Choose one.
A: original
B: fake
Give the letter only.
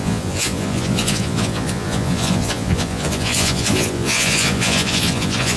B